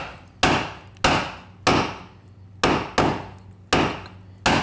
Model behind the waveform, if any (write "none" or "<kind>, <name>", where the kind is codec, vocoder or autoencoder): none